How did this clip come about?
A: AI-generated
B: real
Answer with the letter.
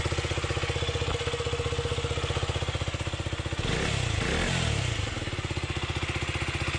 B